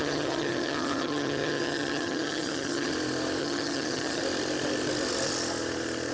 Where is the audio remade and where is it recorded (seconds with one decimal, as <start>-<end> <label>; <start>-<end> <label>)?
0.0-2.9 remade; 2.9-3.4 recorded; 3.4-4.2 remade; 4.2-6.1 recorded